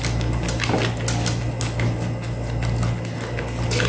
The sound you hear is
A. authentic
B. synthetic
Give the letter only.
A